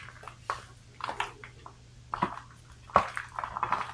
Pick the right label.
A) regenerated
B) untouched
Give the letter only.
B